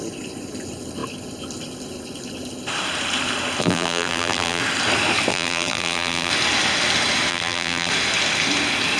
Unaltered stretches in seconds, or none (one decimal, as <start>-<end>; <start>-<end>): 0.0-3.6; 4.6-5.3; 6.3-7.3; 7.9-9.0